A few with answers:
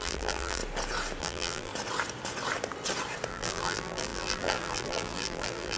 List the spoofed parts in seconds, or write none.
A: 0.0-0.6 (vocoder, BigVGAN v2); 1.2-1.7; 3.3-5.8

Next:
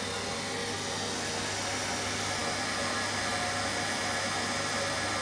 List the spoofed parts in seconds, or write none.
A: none

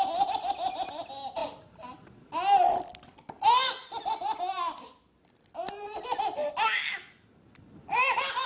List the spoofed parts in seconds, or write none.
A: none

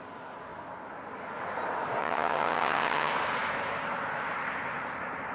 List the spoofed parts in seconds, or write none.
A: 2.0-3.1 (vocoder, HiFi-GAN)

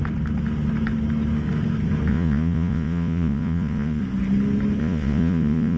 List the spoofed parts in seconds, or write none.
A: 2.1-4.0 (vocoder, Vocos); 4.8-5.8

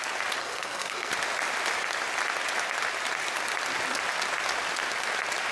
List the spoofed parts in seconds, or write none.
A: 0.4-1.1 (codec, SNAC)